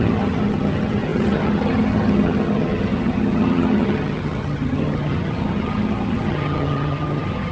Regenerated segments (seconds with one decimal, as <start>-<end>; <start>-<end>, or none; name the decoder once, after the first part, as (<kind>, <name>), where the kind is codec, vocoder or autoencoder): 0.0-7.5 (vocoder, HiFi-GAN)